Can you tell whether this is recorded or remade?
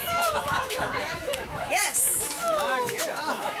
remade